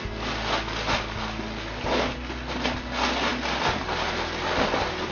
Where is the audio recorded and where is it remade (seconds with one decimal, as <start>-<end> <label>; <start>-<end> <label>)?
0.0-5.1 recorded